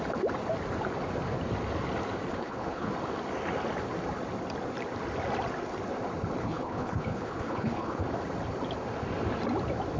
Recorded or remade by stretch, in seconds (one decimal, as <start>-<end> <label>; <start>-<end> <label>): 0.0-2.3 recorded; 2.3-2.9 remade; 2.9-6.4 recorded; 6.4-8.1 remade; 8.1-10.0 recorded